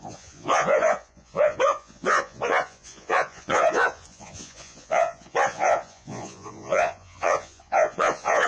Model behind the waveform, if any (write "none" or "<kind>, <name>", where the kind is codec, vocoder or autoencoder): vocoder, Vocos